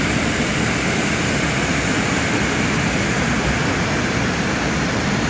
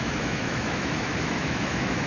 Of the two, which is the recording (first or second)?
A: first